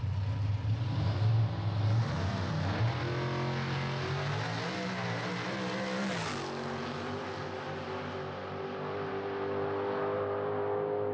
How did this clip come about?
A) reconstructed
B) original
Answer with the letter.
B